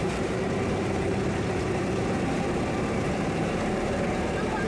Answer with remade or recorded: remade